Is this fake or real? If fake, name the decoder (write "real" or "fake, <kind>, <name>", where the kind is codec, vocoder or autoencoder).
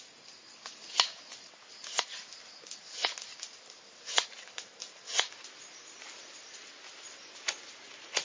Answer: real